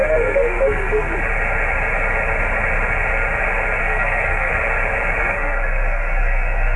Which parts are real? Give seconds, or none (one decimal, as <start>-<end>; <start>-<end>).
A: 1.1-3.8; 4.5-5.2